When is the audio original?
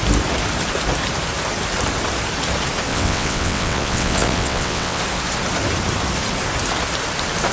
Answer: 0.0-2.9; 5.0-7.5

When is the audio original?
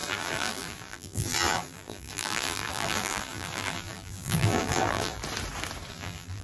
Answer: 5.2-5.9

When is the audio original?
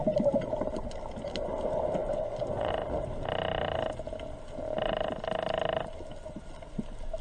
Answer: 0.0-2.0; 2.7-7.2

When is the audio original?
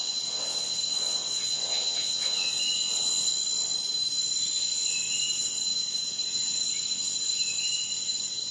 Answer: 3.3-4.6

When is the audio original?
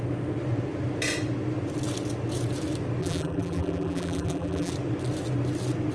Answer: 0.0-3.0; 4.7-5.9